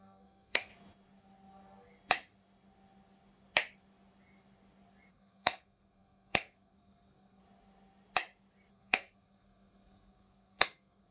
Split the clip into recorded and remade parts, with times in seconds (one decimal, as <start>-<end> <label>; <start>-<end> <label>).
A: 0.0-0.7 remade; 0.7-5.1 recorded; 5.1-7.4 remade; 7.4-8.7 recorded; 8.7-11.1 remade